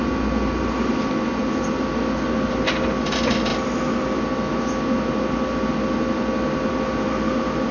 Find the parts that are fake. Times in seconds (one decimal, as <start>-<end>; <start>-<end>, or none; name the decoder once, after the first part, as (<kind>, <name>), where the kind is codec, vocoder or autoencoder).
none